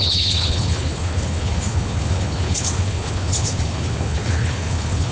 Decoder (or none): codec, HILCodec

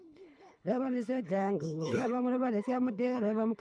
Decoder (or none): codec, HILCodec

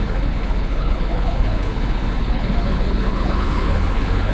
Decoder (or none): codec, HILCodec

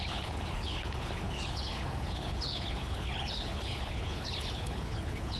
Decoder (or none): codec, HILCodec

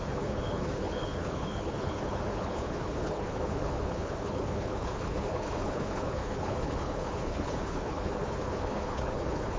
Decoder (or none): codec, HILCodec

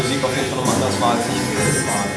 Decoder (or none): none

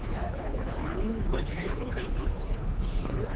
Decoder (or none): codec, HILCodec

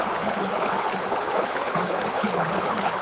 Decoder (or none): codec, HILCodec